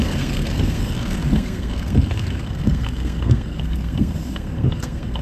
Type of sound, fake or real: fake